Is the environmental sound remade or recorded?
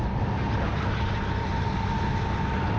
recorded